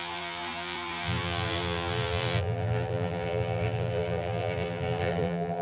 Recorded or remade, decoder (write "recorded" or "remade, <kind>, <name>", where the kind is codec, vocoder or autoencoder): remade, vocoder, BigVGAN v2